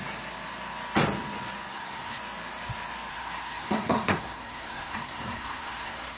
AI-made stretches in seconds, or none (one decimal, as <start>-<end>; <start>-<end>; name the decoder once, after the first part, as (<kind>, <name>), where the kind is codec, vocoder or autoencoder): 1.7-2.2 (codec, SNAC); 3.1-6.2